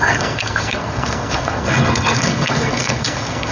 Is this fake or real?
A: fake